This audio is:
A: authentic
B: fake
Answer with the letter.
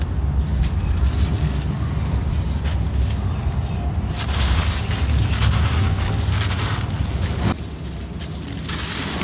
A